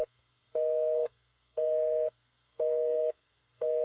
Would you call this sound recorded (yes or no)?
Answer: no